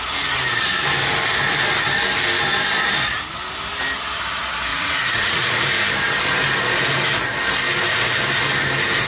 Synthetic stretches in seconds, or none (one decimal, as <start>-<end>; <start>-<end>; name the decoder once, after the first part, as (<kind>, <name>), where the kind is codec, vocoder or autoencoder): 4.7-5.6 (vocoder, Vocos)